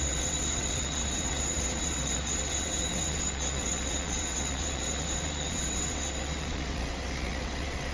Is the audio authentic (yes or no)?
no